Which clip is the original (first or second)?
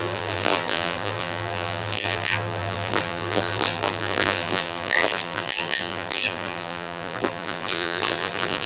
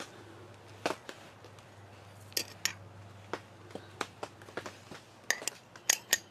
second